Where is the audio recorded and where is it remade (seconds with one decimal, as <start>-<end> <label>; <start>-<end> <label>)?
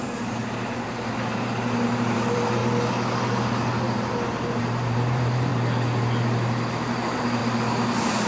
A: 0.0-2.6 remade; 2.6-4.6 recorded; 4.6-5.5 remade; 5.5-6.7 recorded; 6.7-7.4 remade; 7.4-8.3 recorded